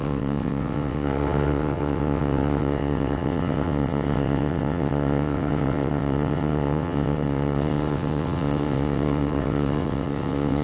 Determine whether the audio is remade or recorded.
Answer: remade